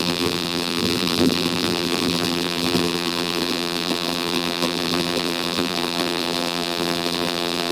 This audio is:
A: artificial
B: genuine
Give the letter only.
A